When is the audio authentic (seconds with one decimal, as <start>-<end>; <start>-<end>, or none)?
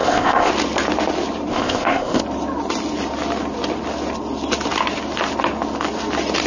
0.5-1.5; 2.2-6.5